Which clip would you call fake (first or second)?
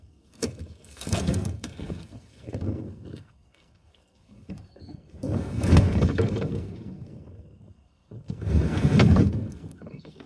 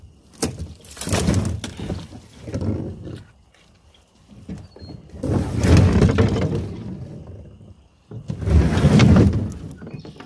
first